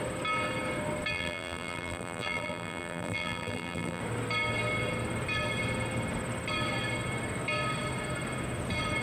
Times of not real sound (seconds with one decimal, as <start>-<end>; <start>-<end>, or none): 1.1-4.0